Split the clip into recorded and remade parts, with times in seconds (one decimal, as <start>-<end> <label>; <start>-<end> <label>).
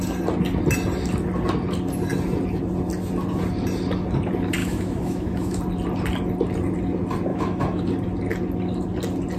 0.0-4.6 recorded; 4.6-5.6 remade; 5.6-7.3 recorded; 7.3-7.8 remade; 7.8-9.4 recorded